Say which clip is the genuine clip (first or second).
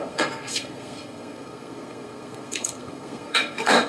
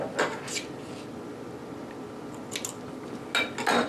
second